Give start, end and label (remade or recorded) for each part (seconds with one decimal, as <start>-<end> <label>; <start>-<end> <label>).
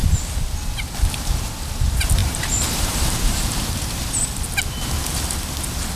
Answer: 0.0-2.2 recorded; 2.2-3.6 remade; 3.6-6.0 recorded